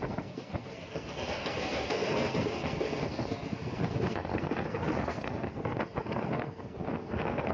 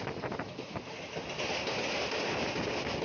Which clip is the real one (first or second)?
second